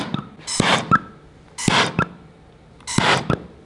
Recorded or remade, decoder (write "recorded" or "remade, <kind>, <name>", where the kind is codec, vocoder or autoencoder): recorded